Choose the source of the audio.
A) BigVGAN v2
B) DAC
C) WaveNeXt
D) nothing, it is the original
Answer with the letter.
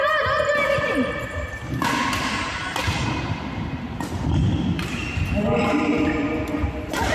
D